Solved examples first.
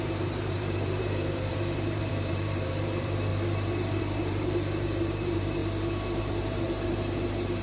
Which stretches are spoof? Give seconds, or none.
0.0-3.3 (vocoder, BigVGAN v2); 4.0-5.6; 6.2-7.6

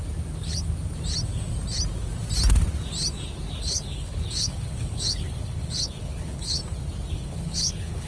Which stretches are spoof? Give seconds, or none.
3.6-6.6 (codec, HILCodec); 7.1-8.1

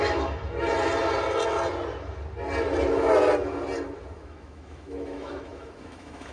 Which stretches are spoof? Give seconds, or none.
0.0-0.4 (autoencoder, DAC-VAE); 4.2-6.3

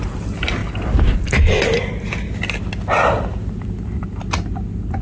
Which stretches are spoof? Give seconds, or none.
none

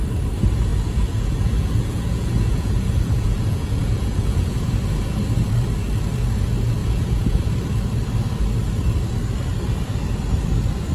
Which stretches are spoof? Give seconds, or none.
0.7-4.7 (vocoder, Vocos); 6.8-7.5

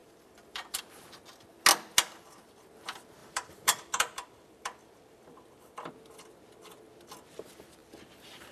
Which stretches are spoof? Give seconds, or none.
0.0-0.8 (vocoder, BigVGAN v2); 3.2-5.9; 7.8-8.5

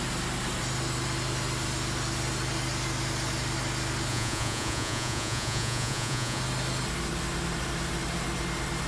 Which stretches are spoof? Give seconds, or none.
4.1-6.4 (vocoder, Vocos)